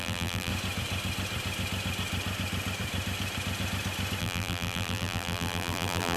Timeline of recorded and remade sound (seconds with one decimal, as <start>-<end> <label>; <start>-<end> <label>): 0.0-0.5 remade; 0.5-4.2 recorded; 4.2-6.2 remade